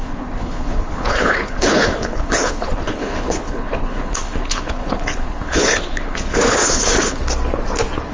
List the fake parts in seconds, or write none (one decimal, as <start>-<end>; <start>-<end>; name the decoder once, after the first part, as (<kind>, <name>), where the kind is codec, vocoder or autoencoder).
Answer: 0.0-7.2 (codec, HILCodec)